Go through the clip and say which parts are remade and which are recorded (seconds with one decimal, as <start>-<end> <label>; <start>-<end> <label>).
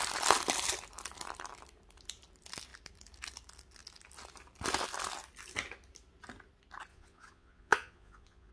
0.0-6.9 recorded; 6.9-8.5 remade